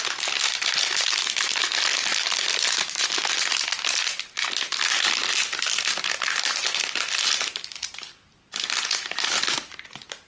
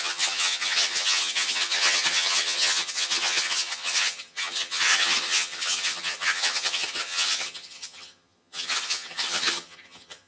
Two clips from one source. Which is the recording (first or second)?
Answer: first